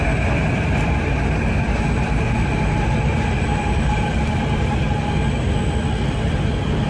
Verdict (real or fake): real